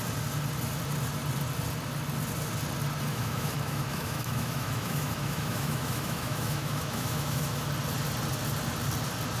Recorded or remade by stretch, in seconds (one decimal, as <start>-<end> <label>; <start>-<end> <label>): 0.0-3.1 recorded; 3.1-7.7 remade; 7.7-9.4 recorded